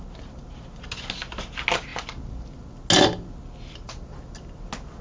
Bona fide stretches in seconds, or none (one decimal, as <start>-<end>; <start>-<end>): 0.0-5.0